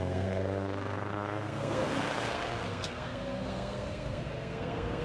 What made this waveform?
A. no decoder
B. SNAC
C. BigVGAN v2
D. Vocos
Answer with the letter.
B